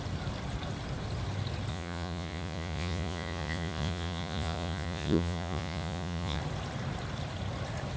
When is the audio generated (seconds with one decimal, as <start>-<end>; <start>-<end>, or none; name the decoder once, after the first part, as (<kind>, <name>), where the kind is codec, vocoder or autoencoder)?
1.7-6.4 (vocoder, Vocos)